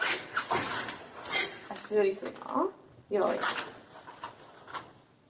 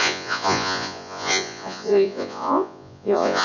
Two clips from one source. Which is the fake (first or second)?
second